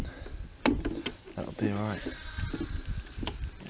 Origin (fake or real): real